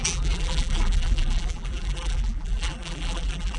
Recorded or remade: remade